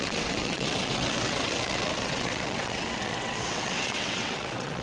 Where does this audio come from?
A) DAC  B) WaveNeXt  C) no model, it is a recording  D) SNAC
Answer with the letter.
B